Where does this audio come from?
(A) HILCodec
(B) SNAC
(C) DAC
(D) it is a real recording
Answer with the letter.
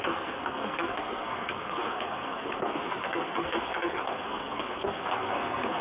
B